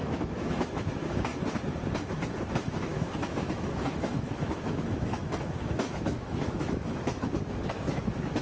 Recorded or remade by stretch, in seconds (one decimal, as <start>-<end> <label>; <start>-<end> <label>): 0.0-1.3 remade; 1.3-2.5 recorded; 2.5-8.4 remade